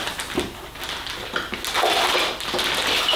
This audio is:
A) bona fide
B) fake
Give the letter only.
A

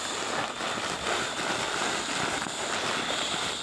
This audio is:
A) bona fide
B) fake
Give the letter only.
A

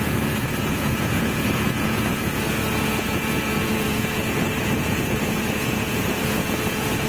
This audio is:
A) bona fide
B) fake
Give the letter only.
B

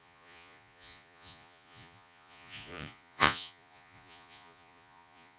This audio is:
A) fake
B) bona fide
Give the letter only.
A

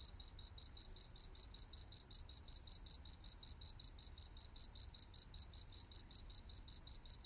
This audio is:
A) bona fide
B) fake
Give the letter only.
A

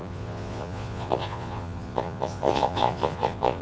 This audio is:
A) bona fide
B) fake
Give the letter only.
B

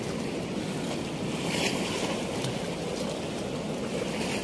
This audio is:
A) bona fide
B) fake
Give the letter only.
A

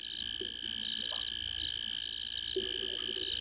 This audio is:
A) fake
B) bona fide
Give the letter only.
B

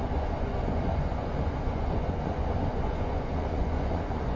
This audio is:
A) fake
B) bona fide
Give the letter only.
A